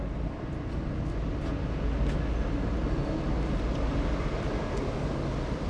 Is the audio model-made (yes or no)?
no